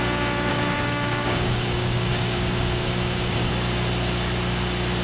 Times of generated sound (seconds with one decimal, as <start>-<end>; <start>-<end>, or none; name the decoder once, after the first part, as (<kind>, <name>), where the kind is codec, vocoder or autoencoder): 0.5-3.5 (codec, DAC)